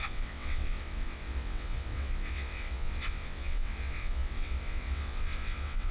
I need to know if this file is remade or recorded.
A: remade